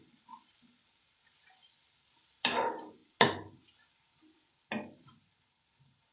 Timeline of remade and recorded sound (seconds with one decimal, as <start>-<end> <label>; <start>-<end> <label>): 0.0-6.1 recorded